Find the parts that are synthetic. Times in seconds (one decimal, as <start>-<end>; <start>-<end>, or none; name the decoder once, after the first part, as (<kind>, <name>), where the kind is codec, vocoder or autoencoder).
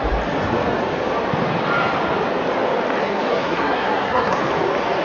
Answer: 3.0-4.4 (codec, SNAC)